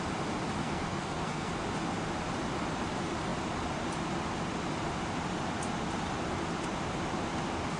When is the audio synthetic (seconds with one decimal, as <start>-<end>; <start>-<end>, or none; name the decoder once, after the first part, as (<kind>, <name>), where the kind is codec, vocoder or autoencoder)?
0.6-1.5 (codec, SNAC)